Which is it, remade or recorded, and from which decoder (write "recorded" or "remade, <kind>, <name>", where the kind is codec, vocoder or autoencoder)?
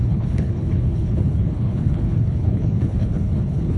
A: remade, codec, HILCodec